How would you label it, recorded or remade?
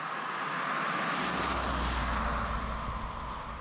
recorded